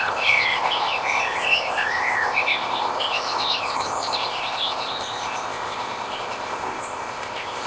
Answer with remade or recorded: remade